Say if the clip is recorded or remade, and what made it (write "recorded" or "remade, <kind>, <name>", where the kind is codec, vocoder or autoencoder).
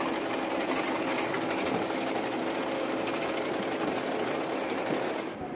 recorded